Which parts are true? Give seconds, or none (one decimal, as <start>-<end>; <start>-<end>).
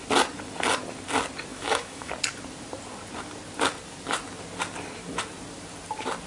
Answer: 0.0-1.5; 2.1-6.3